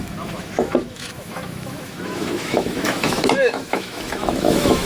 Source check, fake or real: fake